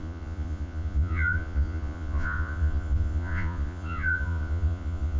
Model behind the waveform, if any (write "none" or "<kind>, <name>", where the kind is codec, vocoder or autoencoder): vocoder, Vocos